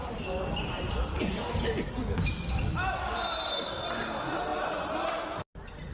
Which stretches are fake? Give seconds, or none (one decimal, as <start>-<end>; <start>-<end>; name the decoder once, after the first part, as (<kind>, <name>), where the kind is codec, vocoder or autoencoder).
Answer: none